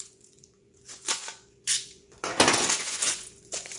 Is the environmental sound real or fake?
fake